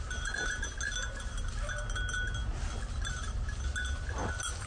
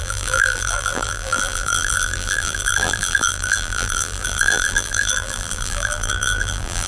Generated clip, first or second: second